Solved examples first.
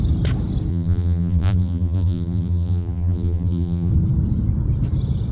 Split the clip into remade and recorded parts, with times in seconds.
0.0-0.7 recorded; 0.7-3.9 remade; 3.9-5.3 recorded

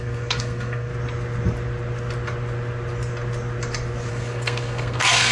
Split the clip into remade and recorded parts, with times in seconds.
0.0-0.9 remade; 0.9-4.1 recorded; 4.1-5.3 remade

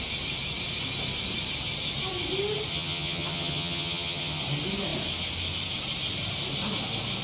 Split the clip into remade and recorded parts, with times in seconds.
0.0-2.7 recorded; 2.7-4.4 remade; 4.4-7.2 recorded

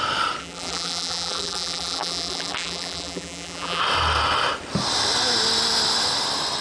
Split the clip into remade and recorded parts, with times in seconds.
0.0-0.4 recorded; 0.4-3.8 remade; 3.8-6.6 recorded